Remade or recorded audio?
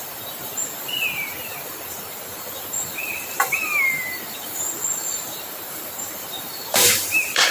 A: remade